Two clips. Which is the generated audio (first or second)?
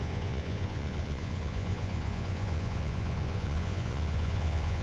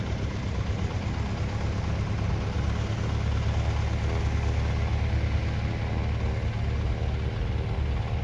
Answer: first